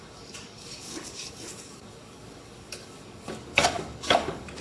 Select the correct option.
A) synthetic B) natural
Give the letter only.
A